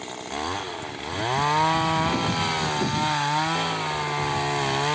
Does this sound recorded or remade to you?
recorded